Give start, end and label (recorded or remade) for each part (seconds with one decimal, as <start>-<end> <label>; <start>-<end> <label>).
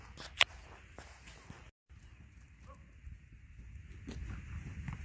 0.0-5.0 recorded